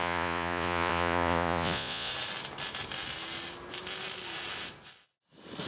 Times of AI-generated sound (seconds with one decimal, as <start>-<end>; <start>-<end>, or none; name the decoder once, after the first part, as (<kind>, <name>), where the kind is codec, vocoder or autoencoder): 0.0-2.1 (vocoder, Vocos)